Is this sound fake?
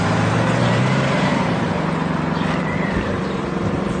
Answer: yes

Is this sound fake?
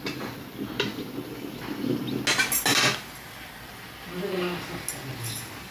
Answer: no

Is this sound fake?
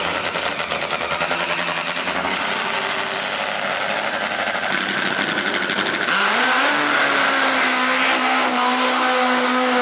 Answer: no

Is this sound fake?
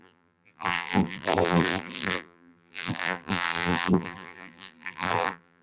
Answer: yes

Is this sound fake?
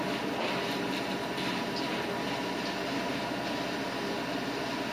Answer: no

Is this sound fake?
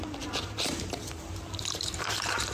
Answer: yes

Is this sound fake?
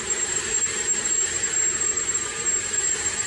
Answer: yes